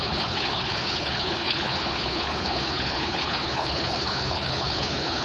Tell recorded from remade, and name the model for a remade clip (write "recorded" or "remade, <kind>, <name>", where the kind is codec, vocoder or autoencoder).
remade, codec, HILCodec